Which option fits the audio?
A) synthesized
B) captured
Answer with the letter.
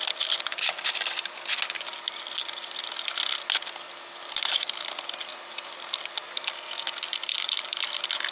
B